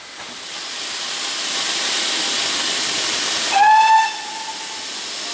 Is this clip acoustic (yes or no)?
yes